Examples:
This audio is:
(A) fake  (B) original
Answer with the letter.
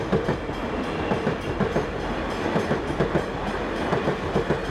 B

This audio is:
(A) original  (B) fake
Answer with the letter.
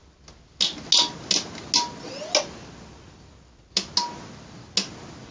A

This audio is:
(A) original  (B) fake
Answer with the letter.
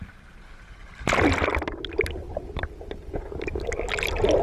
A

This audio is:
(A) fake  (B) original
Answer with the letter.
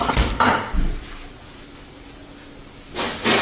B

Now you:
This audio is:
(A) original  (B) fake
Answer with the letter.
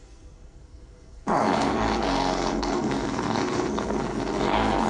B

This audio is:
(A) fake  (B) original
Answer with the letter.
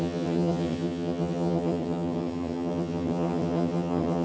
A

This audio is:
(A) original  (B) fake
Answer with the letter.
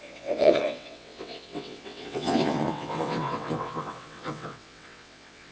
B